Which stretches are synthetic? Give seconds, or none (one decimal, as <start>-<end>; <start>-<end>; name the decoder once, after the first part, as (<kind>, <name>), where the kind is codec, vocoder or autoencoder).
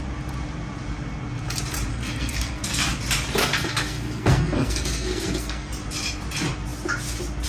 1.9-2.8 (codec, SNAC); 3.4-5.7